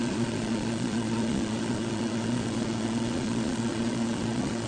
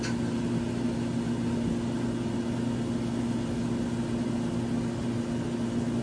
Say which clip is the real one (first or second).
second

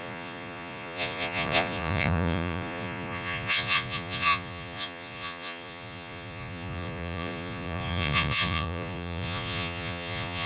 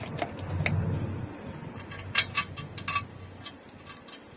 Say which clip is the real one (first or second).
second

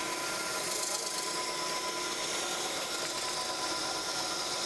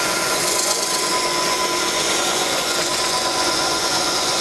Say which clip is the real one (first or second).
first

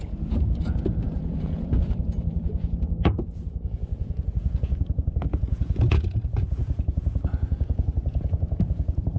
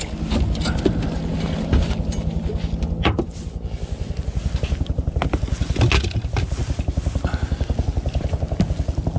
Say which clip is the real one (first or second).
second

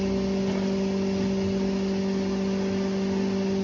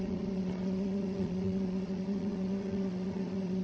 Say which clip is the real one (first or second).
first